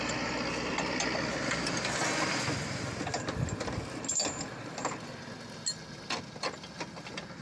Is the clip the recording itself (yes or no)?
yes